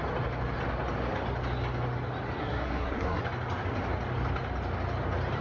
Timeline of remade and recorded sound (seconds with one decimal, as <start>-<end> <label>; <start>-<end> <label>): 0.0-2.4 recorded; 2.4-3.2 remade; 3.2-5.4 recorded